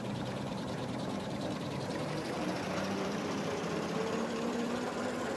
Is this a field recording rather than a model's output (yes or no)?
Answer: no